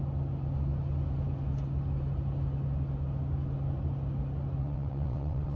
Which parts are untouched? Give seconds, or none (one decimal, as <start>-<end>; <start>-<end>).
0.0-4.6